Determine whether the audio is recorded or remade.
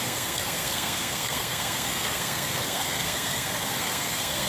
remade